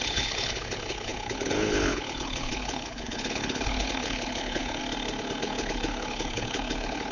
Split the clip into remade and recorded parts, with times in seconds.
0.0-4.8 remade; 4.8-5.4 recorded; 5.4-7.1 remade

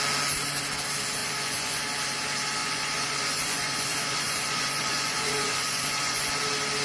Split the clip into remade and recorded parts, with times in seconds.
0.0-1.2 recorded; 1.2-1.8 remade; 1.8-2.6 recorded; 2.6-6.3 remade; 6.3-6.8 recorded

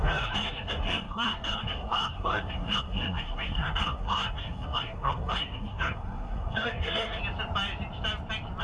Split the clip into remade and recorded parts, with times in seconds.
0.0-7.2 remade; 7.2-8.6 recorded

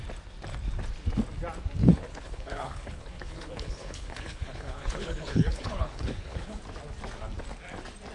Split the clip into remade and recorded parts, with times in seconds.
0.0-1.8 recorded; 1.8-6.6 remade; 6.6-8.1 recorded

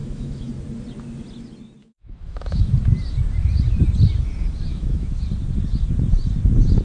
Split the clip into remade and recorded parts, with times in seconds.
0.0-0.5 remade; 0.5-1.8 recorded; 1.8-2.6 remade; 2.6-4.7 recorded; 4.7-5.2 remade; 5.2-6.8 recorded